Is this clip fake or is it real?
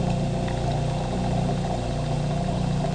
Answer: real